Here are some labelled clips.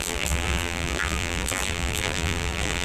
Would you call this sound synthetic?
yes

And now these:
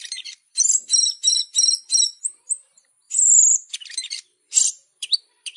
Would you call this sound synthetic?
yes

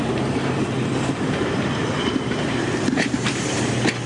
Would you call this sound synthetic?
yes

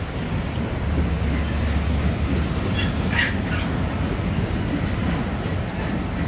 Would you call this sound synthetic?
no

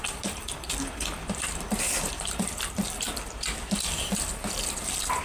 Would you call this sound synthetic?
yes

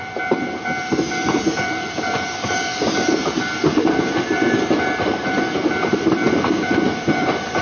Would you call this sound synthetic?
yes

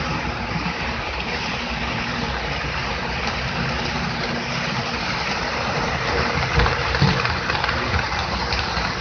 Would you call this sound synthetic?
yes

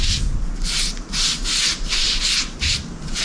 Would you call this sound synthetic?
no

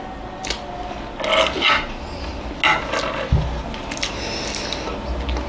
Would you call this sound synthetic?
no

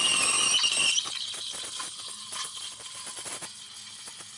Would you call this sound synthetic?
no